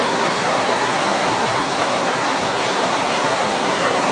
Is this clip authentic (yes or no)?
no